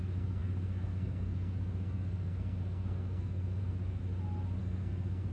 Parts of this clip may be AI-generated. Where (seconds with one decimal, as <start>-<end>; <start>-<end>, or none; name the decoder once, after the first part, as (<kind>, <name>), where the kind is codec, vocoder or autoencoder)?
0.0-4.0 (codec, SNAC); 4.6-5.3